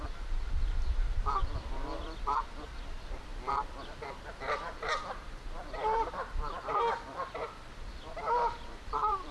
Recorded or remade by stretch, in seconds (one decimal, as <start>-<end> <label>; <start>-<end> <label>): 0.0-1.4 remade; 1.4-2.0 recorded; 2.0-3.3 remade; 3.3-4.9 recorded; 4.9-9.3 remade